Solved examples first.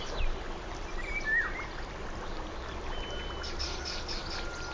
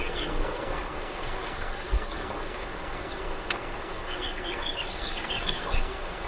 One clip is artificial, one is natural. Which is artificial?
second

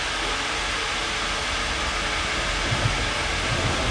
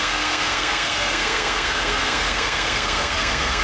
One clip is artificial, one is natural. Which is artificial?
second